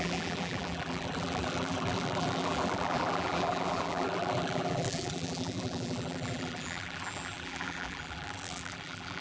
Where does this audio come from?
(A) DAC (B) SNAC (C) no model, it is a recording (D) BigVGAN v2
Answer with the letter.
D